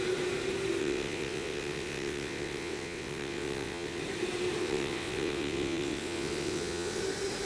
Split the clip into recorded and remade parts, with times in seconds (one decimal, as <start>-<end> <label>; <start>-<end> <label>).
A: 0.0-0.8 recorded; 0.8-4.0 remade; 4.0-4.6 recorded; 4.6-7.0 remade; 7.0-7.5 recorded

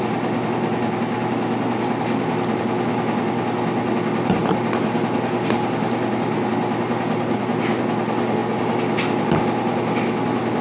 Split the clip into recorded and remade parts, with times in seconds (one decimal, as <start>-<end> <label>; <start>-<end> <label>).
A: 0.0-10.6 recorded

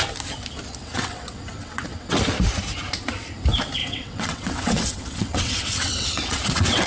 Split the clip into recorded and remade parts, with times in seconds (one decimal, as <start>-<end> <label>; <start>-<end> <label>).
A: 0.0-0.8 recorded; 0.8-2.2 remade; 2.2-3.8 recorded; 3.8-6.9 remade